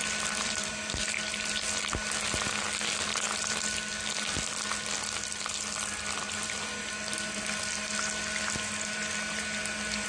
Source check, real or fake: real